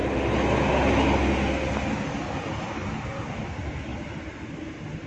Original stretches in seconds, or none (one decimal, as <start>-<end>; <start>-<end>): 0.0-5.1